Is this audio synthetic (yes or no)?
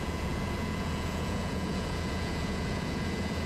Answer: yes